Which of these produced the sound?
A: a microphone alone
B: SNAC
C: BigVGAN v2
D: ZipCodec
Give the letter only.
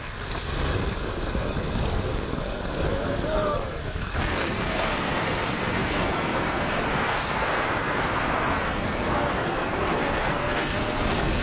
B